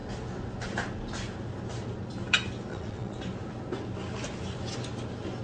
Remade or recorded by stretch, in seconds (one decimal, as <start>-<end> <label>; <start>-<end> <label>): 0.0-2.7 recorded; 2.7-3.2 remade; 3.2-5.4 recorded